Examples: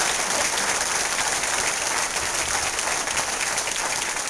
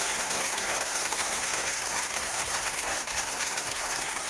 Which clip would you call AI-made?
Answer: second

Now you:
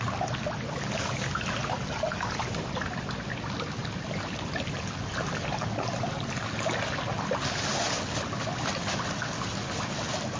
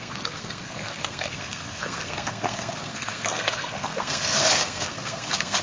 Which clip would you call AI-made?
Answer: second